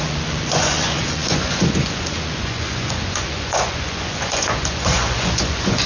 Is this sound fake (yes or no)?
yes